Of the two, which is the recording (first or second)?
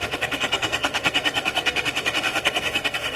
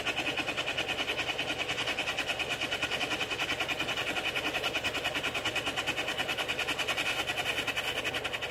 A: second